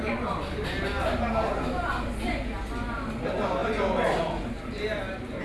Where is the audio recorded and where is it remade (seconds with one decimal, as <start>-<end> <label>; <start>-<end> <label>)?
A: 0.0-5.4 recorded